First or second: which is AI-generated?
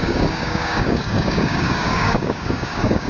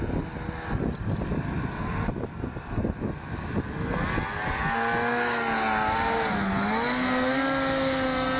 first